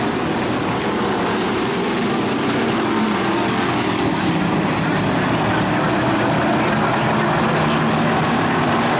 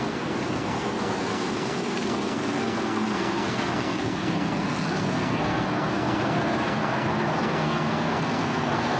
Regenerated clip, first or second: second